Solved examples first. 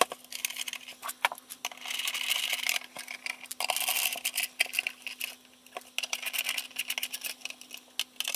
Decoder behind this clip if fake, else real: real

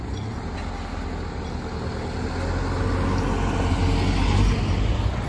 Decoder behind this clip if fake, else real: real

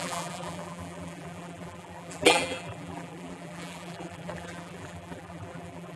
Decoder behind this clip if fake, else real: fake, vocoder, BigVGAN v2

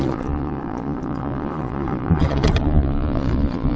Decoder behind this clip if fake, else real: fake, vocoder, Vocos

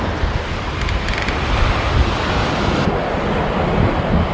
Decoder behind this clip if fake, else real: real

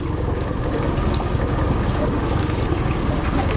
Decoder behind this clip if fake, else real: fake, codec, DAC